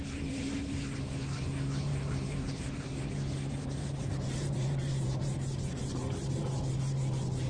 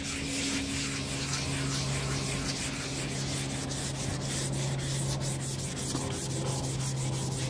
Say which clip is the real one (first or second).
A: second